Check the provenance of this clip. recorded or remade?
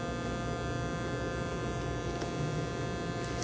recorded